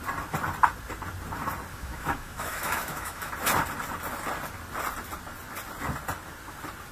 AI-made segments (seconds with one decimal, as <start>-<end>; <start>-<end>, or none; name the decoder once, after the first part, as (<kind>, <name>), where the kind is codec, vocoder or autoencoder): 1.7-3.3 (autoencoder, DAC-VAE)